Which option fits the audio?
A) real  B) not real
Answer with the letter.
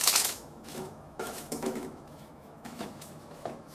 B